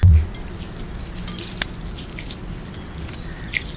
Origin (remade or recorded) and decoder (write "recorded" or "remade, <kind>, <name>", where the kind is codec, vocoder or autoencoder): recorded